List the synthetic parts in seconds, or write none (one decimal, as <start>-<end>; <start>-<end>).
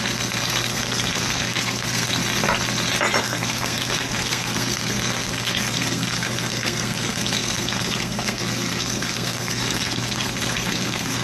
0.0-2.2; 3.2-11.2